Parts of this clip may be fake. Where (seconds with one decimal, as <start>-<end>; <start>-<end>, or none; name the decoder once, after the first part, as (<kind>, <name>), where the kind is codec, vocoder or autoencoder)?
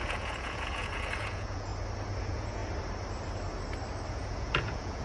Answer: 0.0-1.7 (vocoder, Vocos); 2.2-2.6; 4.1-5.0